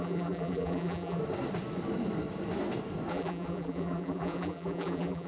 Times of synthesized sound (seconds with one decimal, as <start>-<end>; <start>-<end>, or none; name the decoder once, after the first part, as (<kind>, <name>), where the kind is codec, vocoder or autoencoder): 0.0-1.2 (vocoder, BigVGAN v2); 3.1-5.3